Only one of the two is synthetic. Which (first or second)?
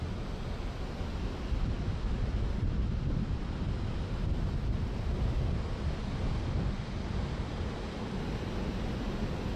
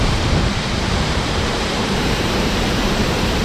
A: second